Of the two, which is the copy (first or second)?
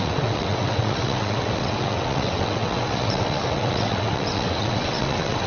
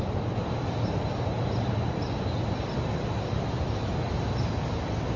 first